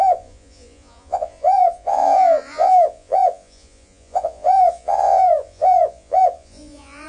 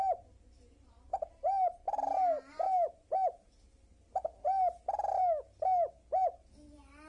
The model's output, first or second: first